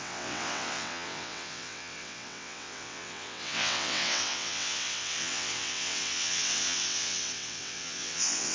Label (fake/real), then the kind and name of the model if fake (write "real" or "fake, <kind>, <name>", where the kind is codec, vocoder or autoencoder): fake, vocoder, WaveNeXt